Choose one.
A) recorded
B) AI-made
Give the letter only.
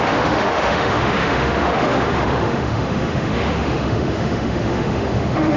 B